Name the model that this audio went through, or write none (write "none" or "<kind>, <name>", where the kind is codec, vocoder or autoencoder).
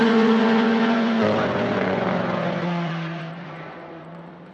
vocoder, Vocos